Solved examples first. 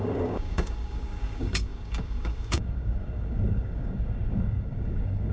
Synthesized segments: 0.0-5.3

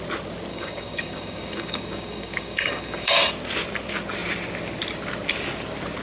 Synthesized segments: 0.5-3.3

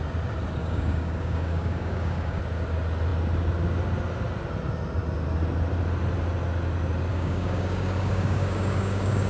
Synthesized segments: 0.6-2.4; 7.1-9.3

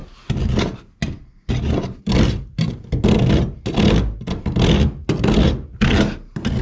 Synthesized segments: none

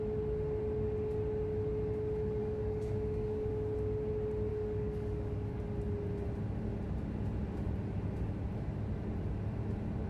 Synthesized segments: 2.4-3.5; 4.5-5.6